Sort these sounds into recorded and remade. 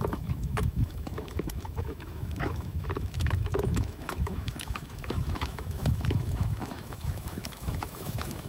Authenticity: remade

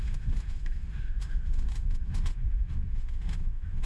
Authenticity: remade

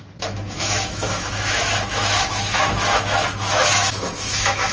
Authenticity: remade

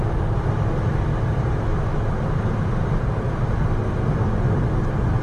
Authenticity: recorded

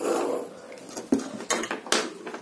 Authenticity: recorded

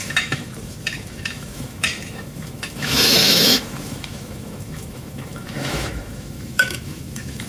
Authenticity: remade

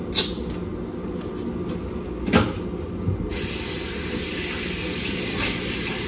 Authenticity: recorded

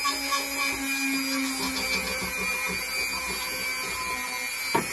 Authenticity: recorded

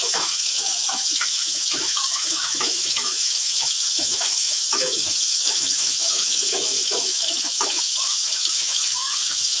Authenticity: remade